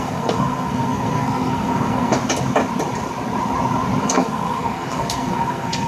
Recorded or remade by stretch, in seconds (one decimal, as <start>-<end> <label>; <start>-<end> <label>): 0.0-2.2 remade; 2.2-4.0 recorded; 4.0-5.9 remade